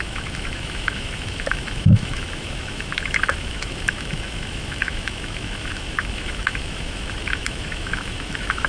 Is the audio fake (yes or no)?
yes